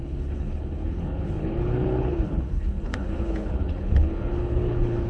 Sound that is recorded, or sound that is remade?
remade